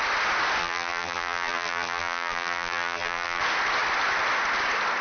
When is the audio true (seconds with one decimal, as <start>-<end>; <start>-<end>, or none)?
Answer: 0.0-0.6; 3.4-5.0